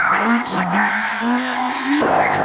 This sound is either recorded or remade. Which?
remade